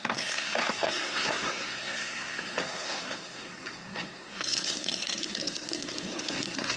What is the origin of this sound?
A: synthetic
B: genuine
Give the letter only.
A